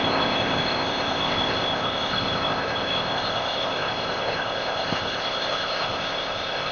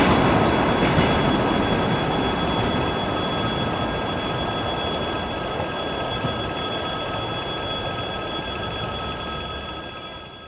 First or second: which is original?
second